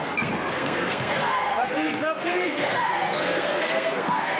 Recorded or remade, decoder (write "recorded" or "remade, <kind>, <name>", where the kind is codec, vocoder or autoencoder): remade, codec, SNAC